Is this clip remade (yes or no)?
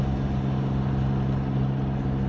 no